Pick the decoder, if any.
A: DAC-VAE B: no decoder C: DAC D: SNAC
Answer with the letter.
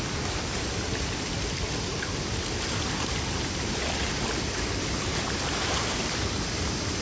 B